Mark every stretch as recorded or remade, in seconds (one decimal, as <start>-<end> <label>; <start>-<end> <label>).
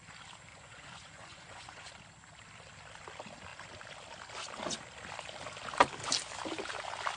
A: 0.0-0.5 recorded; 0.5-1.9 remade; 1.9-7.2 recorded